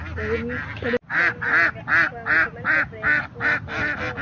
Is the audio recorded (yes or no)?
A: yes